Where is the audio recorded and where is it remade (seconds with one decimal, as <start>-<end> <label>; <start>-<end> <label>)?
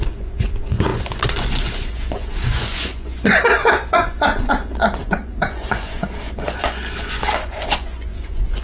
0.0-8.6 remade